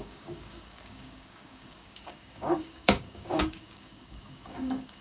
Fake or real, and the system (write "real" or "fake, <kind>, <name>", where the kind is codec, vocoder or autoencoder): fake, codec, DAC